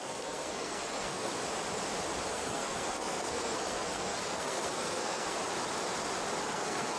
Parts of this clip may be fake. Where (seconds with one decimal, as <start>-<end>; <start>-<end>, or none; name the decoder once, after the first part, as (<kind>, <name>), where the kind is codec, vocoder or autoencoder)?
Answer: 0.0-1.3 (codec, SNAC); 2.3-5.4; 6.4-7.0